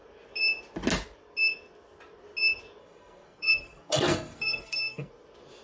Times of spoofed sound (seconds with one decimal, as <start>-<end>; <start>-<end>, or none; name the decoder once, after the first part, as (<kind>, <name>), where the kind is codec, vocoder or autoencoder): 2.8-5.1 (codec, SNAC)